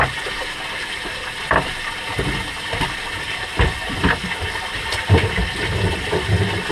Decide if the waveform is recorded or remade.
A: recorded